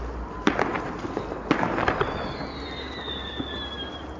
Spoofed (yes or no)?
no